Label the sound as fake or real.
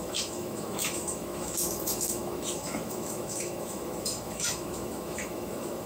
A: fake